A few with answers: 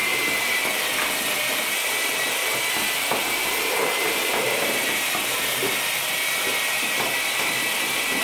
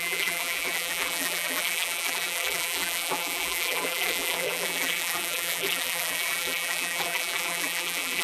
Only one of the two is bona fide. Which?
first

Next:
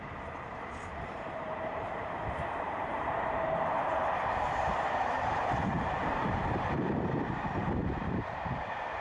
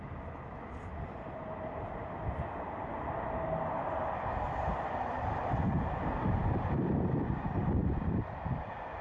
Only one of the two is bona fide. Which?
second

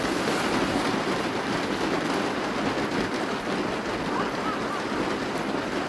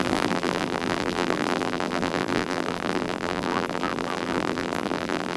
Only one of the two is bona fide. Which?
first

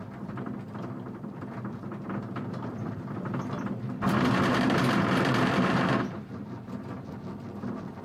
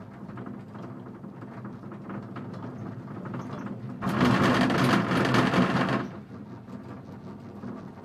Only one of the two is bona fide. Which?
second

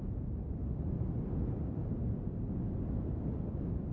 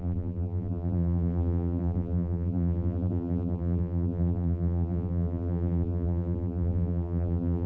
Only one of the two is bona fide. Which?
first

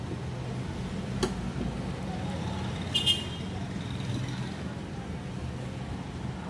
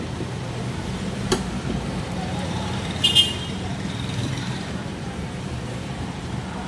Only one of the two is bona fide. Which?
first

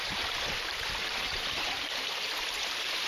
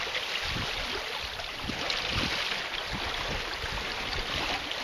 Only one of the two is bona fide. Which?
second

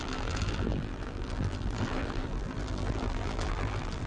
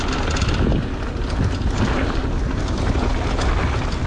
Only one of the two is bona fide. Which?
second